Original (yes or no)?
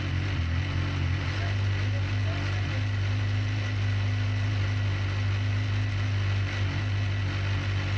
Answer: yes